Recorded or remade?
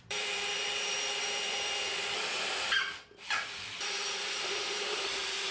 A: remade